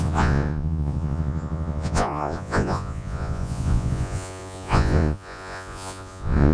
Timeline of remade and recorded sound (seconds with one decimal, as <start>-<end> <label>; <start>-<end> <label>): 0.0-6.5 remade